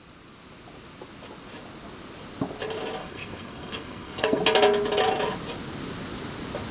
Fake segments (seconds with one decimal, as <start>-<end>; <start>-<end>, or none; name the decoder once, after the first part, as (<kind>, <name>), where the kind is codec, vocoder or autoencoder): 3.0-4.4 (codec, SNAC)